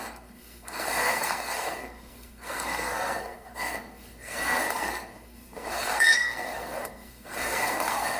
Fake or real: fake